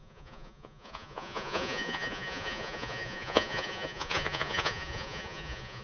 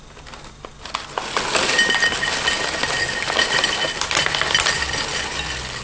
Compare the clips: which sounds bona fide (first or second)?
second